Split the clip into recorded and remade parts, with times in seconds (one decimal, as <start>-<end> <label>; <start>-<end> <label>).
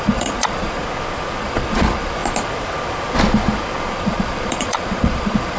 0.0-0.8 remade; 0.8-1.4 recorded; 1.4-2.2 remade; 2.2-3.9 recorded; 3.9-5.6 remade